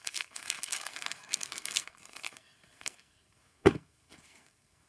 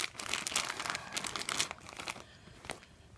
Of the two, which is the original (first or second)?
second